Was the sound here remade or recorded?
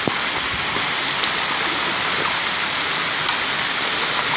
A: recorded